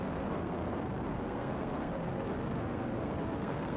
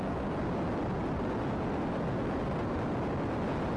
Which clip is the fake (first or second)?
first